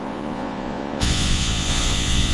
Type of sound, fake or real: fake